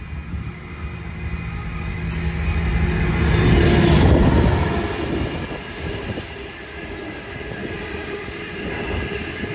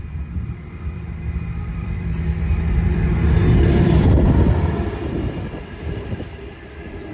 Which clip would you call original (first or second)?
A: first